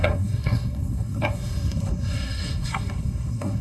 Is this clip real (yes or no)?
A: no